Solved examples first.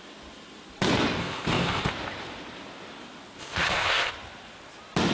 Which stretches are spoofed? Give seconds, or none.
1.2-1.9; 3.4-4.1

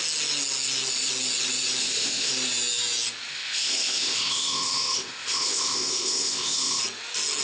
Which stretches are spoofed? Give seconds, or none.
1.8-2.3; 3.3-6.8

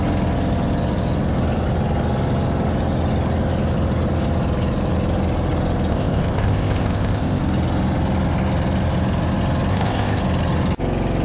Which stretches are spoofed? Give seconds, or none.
5.9-7.4; 9.7-10.2